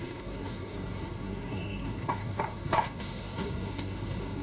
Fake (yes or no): yes